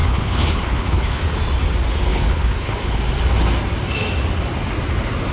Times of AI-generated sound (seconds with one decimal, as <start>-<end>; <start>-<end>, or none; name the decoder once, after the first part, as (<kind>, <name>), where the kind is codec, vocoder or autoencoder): 0.0-1.2 (codec, HILCodec); 2.1-3.0